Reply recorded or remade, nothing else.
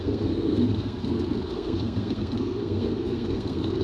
remade